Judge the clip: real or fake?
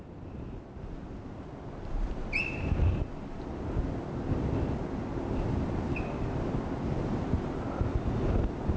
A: real